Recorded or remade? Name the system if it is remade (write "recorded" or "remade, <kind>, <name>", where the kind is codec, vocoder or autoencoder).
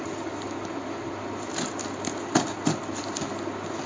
recorded